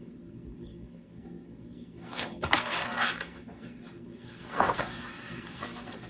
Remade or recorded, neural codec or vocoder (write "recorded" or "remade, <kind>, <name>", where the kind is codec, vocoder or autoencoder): remade, codec, SNAC